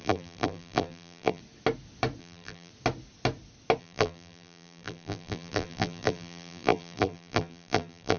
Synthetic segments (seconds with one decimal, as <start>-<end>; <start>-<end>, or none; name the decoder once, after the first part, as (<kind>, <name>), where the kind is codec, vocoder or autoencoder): 0.0-1.4 (vocoder, BigVGAN v2); 2.2-2.7; 3.8-8.2